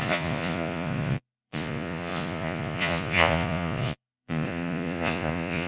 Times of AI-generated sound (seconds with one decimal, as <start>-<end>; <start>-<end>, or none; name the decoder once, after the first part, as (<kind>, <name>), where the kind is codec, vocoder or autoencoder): 0.0-5.7 (vocoder, Vocos)